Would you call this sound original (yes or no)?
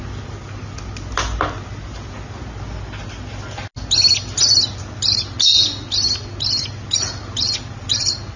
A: yes